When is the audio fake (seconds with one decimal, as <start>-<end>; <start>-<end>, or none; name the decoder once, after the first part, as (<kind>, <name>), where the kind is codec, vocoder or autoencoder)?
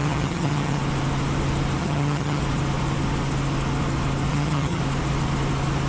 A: 0.0-0.8 (vocoder, HiFi-GAN); 1.8-2.4; 4.3-4.8